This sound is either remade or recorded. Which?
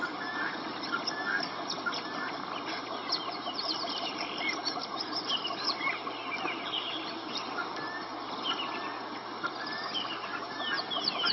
recorded